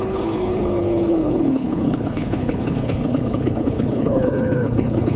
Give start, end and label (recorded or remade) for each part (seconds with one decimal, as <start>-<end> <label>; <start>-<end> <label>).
0.0-5.2 remade